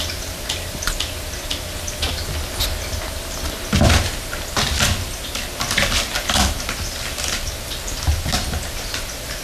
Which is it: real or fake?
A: real